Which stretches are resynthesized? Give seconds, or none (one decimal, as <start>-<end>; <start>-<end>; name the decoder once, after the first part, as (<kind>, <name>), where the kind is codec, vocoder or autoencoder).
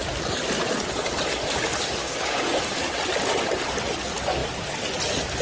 2.0-2.6 (codec, DAC)